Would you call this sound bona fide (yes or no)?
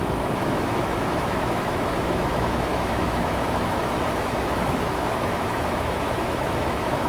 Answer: no